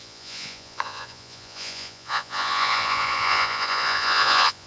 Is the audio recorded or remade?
remade